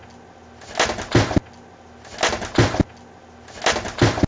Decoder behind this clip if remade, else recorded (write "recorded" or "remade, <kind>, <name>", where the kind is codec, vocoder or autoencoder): recorded